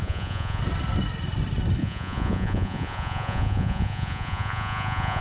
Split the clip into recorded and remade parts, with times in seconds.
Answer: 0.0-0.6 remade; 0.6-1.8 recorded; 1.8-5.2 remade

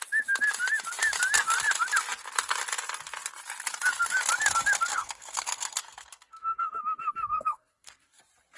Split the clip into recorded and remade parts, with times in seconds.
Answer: 0.0-4.9 recorded; 4.9-6.8 remade; 6.8-7.3 recorded; 7.3-8.2 remade; 8.2-8.6 recorded

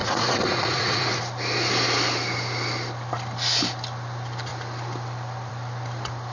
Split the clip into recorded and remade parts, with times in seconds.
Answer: 0.0-1.2 remade; 1.2-6.3 recorded

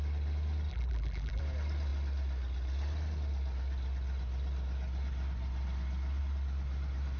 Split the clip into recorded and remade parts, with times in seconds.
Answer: 0.0-0.7 recorded; 0.7-1.4 remade; 1.4-7.2 recorded

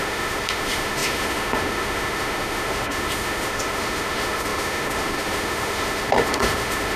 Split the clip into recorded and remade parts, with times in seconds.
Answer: 0.0-7.0 remade